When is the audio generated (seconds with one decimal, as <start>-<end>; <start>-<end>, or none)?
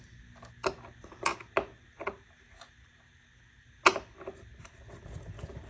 none